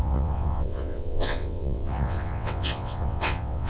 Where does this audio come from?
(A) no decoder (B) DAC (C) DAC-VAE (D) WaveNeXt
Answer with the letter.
D